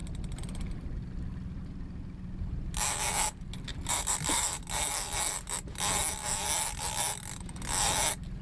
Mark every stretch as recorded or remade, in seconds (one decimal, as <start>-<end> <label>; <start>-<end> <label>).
0.0-3.7 recorded; 3.7-4.4 remade; 4.4-8.4 recorded